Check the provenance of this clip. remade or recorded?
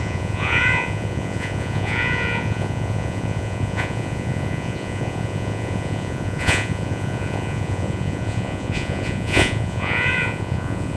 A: remade